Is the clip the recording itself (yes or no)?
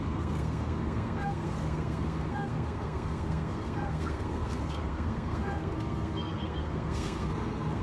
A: no